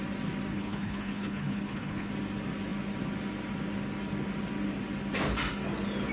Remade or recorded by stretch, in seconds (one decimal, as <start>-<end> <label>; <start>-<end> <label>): 0.0-0.5 recorded; 0.5-2.1 remade; 2.1-6.1 recorded